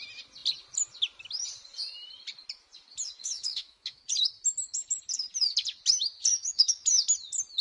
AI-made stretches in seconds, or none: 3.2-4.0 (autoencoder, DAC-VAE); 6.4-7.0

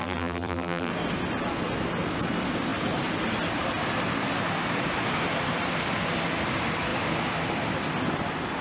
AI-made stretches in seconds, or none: 0.0-0.9 (vocoder, BigVGAN v2)

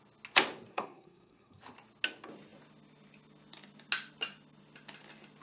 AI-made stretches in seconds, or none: 0.7-1.6 (codec, SNAC)

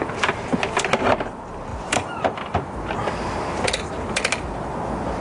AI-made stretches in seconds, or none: none

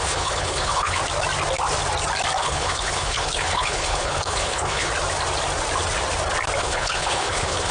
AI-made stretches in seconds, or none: 0.0-1.0 (codec, HILCodec); 2.4-4.9; 6.6-7.7